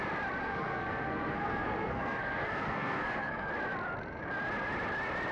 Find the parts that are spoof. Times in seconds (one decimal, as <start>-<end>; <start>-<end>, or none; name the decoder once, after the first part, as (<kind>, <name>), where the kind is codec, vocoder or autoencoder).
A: 0.4-3.5 (codec, SNAC)